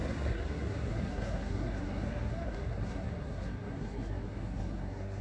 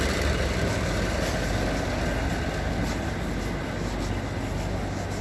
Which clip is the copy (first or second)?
first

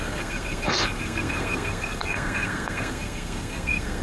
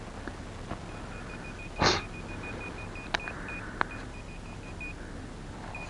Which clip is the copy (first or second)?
first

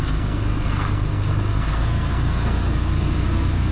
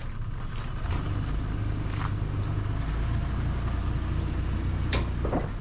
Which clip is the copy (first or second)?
first